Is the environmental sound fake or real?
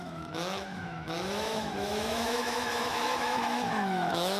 fake